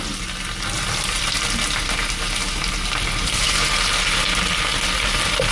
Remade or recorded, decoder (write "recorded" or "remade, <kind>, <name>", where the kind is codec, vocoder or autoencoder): recorded